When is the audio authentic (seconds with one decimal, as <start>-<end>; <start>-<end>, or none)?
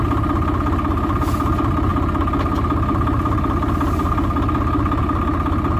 0.0-5.8